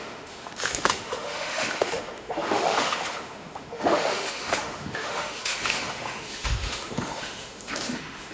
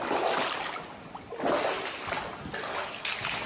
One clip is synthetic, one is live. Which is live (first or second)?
second